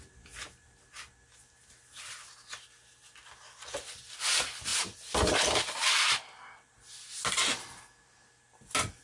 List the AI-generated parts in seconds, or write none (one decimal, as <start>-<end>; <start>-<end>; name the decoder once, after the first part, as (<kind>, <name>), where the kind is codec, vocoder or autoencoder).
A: none